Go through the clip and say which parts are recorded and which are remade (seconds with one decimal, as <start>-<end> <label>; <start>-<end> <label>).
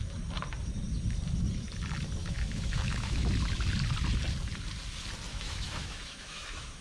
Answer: 0.0-2.2 recorded; 2.2-3.3 remade; 3.3-5.3 recorded; 5.3-6.8 remade